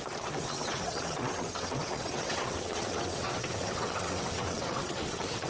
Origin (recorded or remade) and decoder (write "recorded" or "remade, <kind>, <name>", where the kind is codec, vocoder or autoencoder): remade, vocoder, WaveNeXt